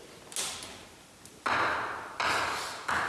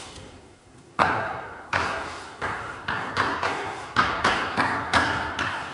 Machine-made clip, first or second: second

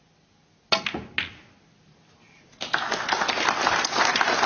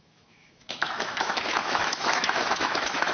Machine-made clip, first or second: second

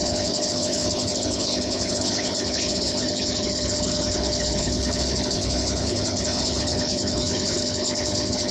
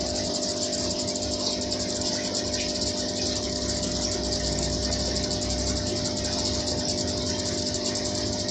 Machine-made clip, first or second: first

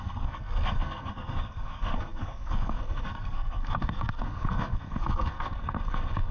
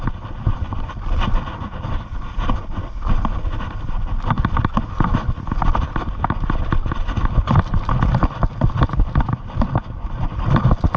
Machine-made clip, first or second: first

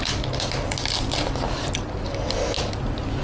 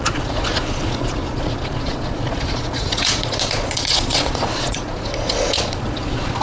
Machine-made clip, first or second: second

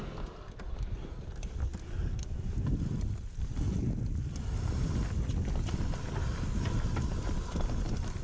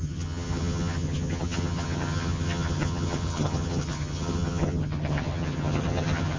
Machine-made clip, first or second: second